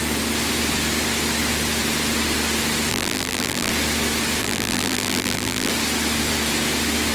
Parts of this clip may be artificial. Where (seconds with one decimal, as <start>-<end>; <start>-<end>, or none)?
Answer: 2.9-3.7; 4.4-5.7